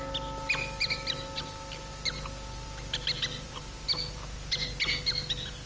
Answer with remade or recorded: recorded